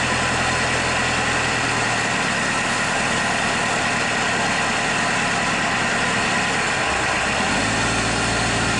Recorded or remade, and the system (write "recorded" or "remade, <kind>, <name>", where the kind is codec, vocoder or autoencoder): recorded